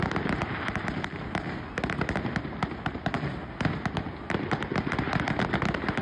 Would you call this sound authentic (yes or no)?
yes